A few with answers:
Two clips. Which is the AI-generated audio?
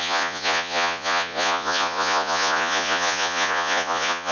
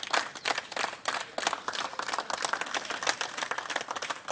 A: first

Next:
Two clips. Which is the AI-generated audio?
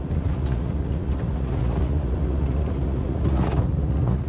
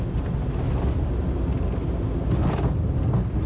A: first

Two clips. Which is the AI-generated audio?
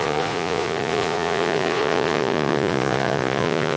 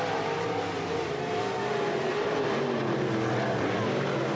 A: first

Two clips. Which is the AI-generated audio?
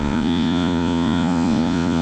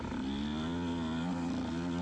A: first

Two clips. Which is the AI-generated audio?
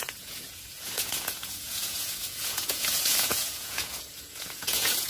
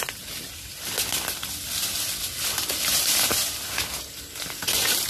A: first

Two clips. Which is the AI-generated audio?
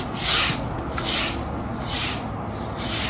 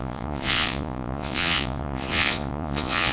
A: second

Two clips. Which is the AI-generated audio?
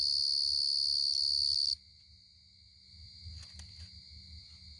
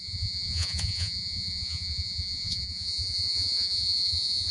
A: second